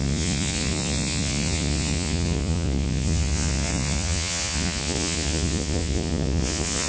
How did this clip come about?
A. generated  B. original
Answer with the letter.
A